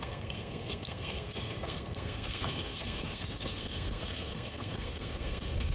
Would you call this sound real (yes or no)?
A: no